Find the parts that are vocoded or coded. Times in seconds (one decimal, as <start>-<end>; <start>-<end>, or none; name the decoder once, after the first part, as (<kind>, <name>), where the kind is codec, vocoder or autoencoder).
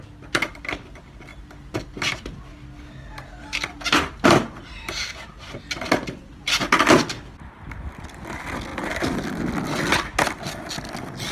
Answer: none